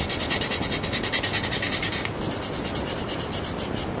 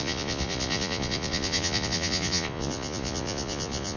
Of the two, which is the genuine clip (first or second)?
first